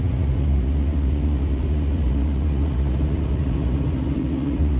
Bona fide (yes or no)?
no